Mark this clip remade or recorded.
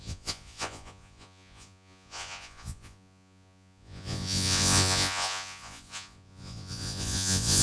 remade